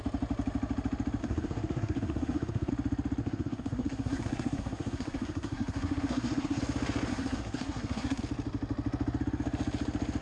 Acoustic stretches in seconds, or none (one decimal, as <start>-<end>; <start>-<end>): 0.0-1.2; 2.7-3.2; 6.6-7.1; 8.2-10.2